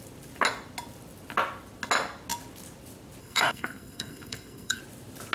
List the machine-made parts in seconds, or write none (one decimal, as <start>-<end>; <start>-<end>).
3.2-4.8